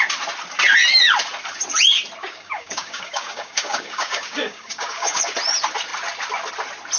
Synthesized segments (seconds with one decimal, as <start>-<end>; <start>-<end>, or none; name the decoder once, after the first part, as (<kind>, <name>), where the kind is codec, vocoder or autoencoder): 2.2-5.2 (codec, DAC)